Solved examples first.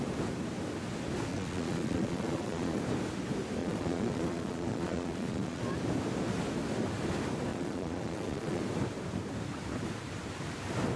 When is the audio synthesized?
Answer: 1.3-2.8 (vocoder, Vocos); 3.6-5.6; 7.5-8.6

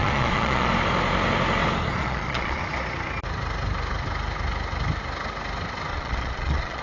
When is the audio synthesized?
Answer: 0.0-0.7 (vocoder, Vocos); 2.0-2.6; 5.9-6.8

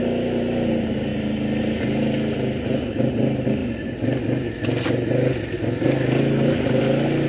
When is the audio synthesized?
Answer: none